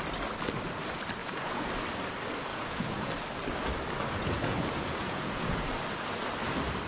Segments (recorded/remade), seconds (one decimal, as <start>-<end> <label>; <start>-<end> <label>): 0.0-1.2 recorded; 1.2-1.7 remade; 1.7-2.5 recorded; 2.5-3.1 remade; 3.1-4.2 recorded; 4.2-5.7 remade; 5.7-6.9 recorded